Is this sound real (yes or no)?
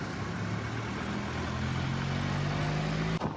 yes